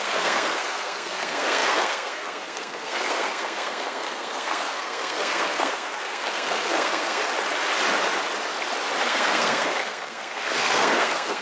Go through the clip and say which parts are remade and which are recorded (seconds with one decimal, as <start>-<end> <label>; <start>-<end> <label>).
0.0-7.2 remade; 7.2-9.0 recorded; 9.0-11.4 remade